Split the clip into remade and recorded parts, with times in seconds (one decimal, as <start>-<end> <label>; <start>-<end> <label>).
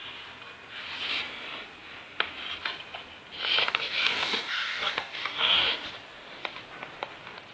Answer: 0.0-3.6 recorded; 3.6-5.7 remade; 5.7-7.5 recorded